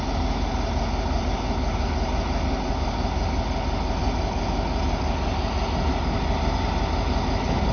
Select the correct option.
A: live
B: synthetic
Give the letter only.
A